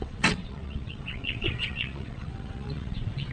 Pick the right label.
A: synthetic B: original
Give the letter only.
A